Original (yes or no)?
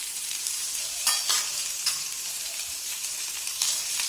no